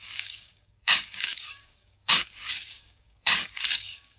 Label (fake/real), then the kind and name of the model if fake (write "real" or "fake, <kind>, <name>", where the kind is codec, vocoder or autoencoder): fake, codec, DAC